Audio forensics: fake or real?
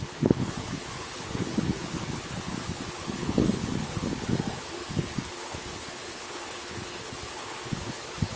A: fake